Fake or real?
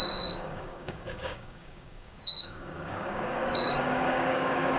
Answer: fake